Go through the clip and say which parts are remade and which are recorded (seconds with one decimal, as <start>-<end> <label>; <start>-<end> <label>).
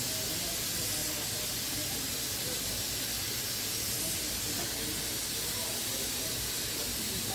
0.0-7.3 recorded